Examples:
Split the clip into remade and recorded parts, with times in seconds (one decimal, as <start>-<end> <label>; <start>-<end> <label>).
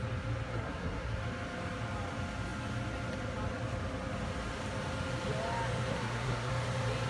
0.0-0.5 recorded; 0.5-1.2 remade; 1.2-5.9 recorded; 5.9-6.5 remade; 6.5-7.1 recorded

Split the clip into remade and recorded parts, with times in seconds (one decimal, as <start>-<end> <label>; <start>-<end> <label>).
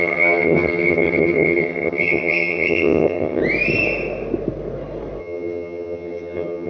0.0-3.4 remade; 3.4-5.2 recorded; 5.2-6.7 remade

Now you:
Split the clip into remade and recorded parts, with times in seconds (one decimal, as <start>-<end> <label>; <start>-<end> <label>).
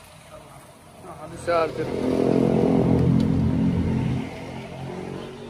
0.0-5.5 recorded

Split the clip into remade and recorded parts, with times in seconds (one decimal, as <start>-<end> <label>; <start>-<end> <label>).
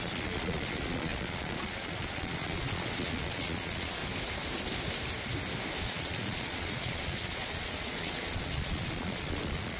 0.0-4.0 remade; 4.0-5.8 recorded; 5.8-9.8 remade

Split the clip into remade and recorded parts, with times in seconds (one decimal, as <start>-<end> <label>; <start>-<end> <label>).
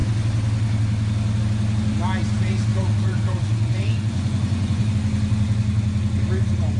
0.0-2.7 recorded; 2.7-4.9 remade; 4.9-6.8 recorded